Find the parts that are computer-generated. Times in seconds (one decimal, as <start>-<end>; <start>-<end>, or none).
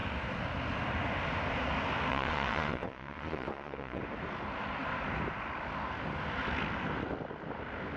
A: 2.1-4.0